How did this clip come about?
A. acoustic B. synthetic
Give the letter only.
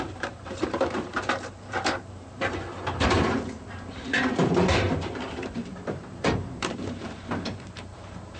B